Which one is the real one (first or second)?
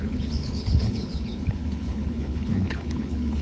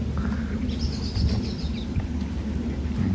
second